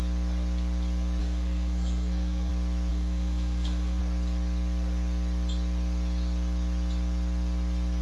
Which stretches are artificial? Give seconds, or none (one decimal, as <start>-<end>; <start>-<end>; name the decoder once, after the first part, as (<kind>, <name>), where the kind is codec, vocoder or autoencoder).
1.2-2.5 (codec, SNAC); 2.9-4.0